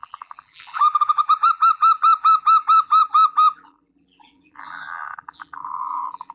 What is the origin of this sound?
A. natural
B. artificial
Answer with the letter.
B